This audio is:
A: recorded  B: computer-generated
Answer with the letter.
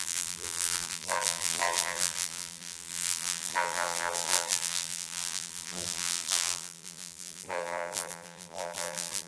B